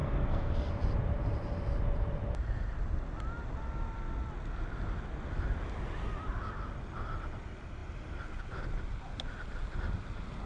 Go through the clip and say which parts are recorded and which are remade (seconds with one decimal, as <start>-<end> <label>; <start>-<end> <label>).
0.0-0.7 remade; 0.7-10.5 recorded

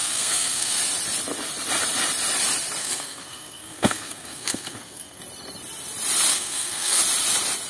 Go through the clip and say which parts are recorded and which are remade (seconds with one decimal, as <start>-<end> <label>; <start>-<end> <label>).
0.0-0.8 remade; 0.8-2.8 recorded; 2.8-5.2 remade; 5.2-6.3 recorded; 6.3-7.0 remade; 7.0-7.7 recorded

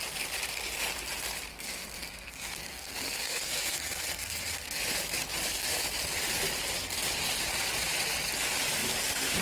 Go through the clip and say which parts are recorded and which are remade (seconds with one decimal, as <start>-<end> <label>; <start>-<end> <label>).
0.0-1.5 recorded; 1.5-4.8 remade; 4.8-9.4 recorded

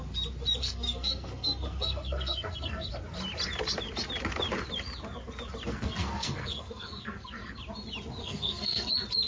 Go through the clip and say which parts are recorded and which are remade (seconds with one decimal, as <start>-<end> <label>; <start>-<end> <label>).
0.0-0.6 recorded; 0.6-2.9 remade; 2.9-5.7 recorded; 5.7-7.6 remade; 7.6-8.2 recorded; 8.2-8.9 remade; 8.9-9.3 recorded

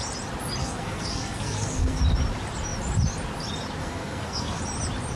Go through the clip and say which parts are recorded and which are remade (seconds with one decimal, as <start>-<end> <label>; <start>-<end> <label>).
0.0-0.6 recorded; 0.6-2.0 remade; 2.0-3.8 recorded; 3.8-4.6 remade; 4.6-5.2 recorded

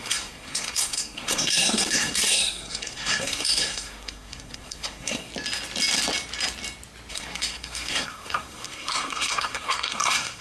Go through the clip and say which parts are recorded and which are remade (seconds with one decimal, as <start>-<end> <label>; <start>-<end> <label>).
0.0-5.3 remade; 5.3-7.1 recorded; 7.1-10.4 remade

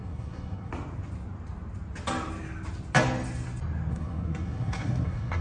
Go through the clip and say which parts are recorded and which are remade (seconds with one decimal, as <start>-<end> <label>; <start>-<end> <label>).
0.0-0.7 remade; 0.7-3.9 recorded; 3.9-5.4 remade

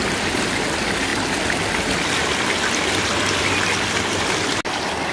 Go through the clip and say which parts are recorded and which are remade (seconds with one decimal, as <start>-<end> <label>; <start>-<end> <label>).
0.0-5.1 recorded